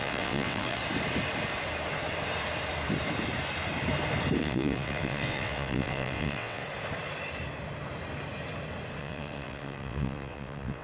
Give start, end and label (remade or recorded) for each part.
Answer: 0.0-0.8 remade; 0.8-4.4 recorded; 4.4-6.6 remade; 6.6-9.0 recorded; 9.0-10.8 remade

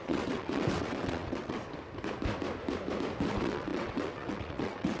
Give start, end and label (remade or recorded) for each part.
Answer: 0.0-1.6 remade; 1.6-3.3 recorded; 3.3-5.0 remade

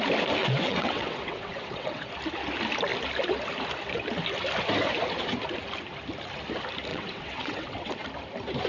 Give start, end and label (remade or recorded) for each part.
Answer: 0.0-0.4 recorded; 0.4-2.1 remade; 2.1-6.9 recorded; 6.9-7.9 remade; 7.9-8.7 recorded

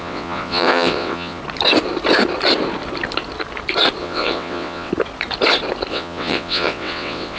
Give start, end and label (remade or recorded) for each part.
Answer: 0.0-1.4 remade; 1.4-4.0 recorded; 4.0-4.9 remade; 4.9-5.9 recorded; 5.9-7.4 remade